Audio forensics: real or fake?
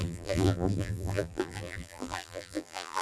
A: fake